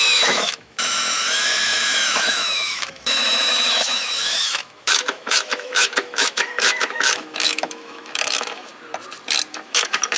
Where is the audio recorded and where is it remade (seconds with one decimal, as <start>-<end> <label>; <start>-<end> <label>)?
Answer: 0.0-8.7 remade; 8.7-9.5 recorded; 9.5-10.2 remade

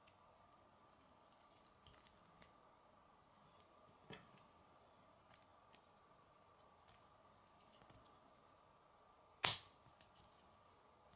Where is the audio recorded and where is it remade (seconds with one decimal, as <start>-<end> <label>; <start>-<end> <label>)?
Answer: 0.0-11.2 recorded

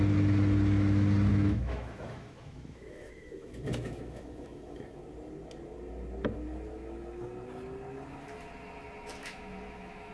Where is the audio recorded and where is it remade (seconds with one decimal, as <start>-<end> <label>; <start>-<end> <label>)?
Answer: 0.0-1.3 recorded; 1.3-5.0 remade; 5.0-9.2 recorded; 9.2-10.1 remade

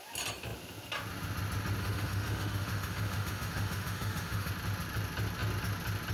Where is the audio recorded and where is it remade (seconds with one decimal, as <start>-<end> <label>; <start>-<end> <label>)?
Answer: 0.0-1.8 recorded; 1.8-4.5 remade; 4.5-6.1 recorded

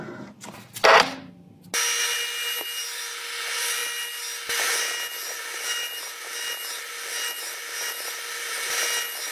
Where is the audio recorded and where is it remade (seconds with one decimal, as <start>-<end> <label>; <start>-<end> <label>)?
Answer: 0.0-9.3 recorded

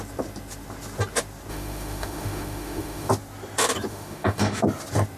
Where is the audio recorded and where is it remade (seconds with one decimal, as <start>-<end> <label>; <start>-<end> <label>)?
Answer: 0.0-1.5 recorded; 1.5-3.1 remade; 3.1-3.9 recorded; 3.9-4.6 remade; 4.6-5.2 recorded